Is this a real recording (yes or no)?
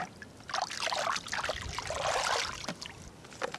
yes